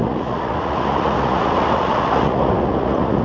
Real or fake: fake